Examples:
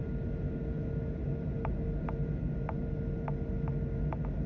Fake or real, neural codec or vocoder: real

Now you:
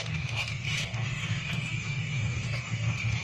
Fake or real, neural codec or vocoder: fake, codec, DAC